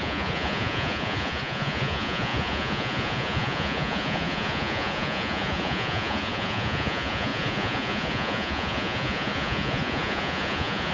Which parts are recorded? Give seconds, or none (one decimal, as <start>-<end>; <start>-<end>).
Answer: none